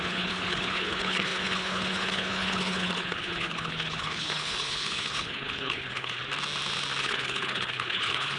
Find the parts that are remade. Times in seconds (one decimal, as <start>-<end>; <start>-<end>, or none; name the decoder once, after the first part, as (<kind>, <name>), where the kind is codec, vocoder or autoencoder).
0.0-6.2 (codec, HILCodec); 7.0-8.4